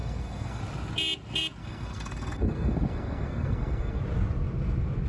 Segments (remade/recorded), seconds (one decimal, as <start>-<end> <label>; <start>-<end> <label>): 0.0-0.6 remade; 0.6-1.6 recorded; 1.6-4.0 remade; 4.0-5.1 recorded